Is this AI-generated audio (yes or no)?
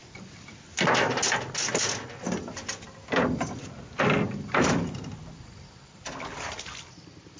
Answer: no